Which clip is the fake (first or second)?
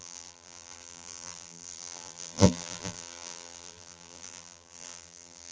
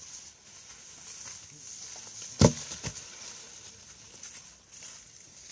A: first